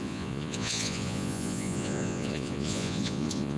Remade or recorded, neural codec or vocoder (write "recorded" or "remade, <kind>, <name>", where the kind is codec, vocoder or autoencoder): remade, vocoder, Vocos